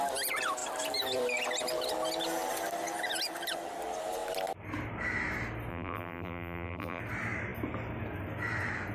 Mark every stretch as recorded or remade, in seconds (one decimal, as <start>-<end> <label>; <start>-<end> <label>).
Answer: 0.0-5.7 recorded; 5.7-7.0 remade; 7.0-8.9 recorded